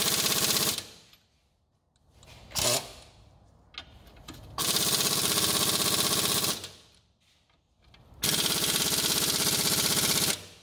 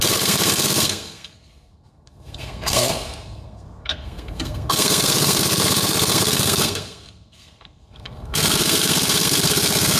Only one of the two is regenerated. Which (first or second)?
second